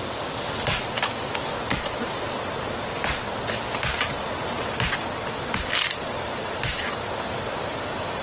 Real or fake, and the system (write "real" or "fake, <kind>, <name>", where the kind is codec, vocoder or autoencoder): real